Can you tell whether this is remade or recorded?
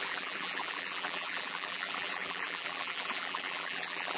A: remade